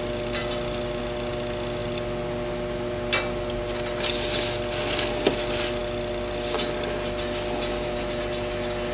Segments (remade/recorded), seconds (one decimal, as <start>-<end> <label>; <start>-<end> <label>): 0.0-8.9 recorded